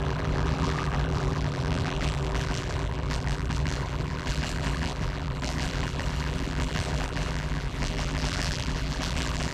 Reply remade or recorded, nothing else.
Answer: remade